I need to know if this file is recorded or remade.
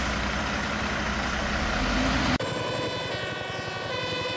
recorded